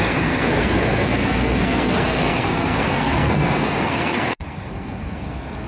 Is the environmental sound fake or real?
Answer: fake